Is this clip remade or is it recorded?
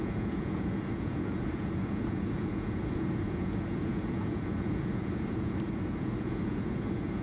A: remade